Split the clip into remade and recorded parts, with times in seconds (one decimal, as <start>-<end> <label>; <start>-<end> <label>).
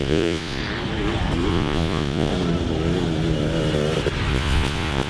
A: 0.0-0.6 remade; 0.6-1.5 recorded; 1.5-2.3 remade; 2.3-4.3 recorded; 4.3-5.1 remade